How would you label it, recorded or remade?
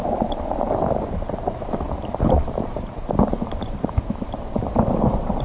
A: remade